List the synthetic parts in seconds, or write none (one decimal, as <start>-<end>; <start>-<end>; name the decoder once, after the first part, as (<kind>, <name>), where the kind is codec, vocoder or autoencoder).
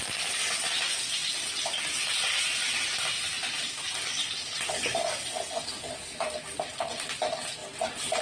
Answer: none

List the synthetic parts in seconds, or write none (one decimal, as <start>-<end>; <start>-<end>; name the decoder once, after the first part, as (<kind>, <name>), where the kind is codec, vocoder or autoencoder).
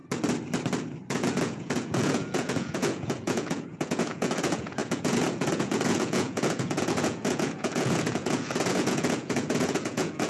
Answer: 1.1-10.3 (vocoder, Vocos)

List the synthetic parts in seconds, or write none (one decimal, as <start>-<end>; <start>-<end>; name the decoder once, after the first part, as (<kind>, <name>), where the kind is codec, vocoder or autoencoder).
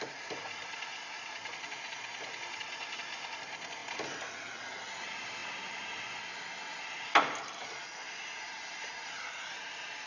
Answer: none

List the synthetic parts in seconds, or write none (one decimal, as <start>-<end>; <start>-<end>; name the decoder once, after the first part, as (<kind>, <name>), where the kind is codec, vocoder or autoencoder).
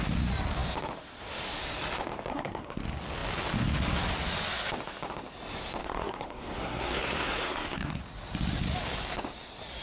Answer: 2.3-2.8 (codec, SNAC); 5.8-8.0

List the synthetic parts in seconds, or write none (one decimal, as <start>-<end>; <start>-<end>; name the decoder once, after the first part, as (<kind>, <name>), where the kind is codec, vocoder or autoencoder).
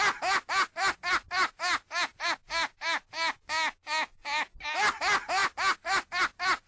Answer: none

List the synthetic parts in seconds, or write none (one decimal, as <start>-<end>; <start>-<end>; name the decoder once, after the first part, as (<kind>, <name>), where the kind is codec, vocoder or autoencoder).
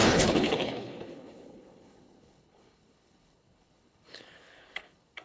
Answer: 0.0-5.2 (codec, HILCodec)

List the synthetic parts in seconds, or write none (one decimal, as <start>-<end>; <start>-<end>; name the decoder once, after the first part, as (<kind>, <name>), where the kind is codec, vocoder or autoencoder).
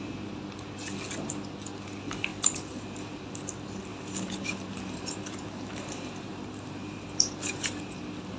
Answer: 2.3-3.2 (vocoder, BigVGAN v2); 3.9-8.0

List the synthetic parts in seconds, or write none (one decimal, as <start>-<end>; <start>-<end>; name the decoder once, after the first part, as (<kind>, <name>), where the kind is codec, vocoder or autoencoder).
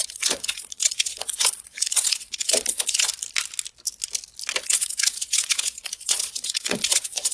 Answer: 0.0-3.1 (vocoder, Vocos); 4.6-7.3